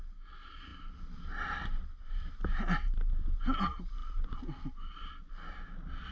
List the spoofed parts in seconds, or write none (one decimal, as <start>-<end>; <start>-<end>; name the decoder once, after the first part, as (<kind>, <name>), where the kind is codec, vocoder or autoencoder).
none